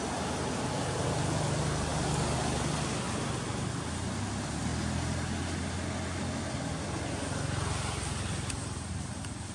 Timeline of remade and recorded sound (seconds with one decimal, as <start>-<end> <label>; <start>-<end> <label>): 0.0-9.5 recorded